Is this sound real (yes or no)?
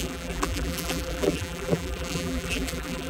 no